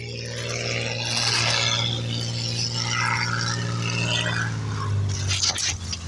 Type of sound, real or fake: real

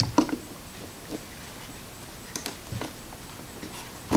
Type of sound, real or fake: real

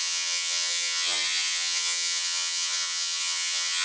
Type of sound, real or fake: fake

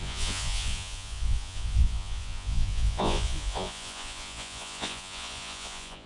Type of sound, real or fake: fake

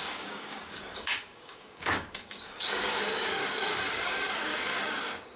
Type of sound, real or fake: fake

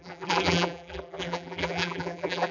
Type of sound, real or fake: fake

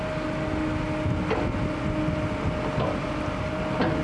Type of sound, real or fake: real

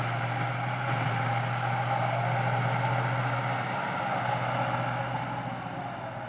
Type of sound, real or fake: real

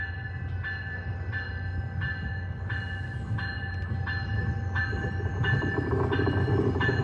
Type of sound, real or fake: real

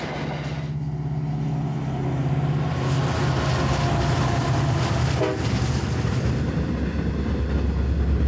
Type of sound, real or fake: real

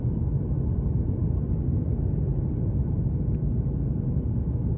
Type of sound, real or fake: real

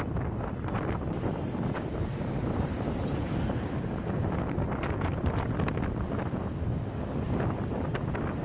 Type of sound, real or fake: real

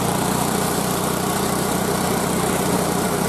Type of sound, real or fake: fake